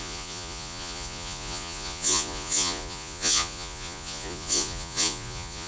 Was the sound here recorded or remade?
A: remade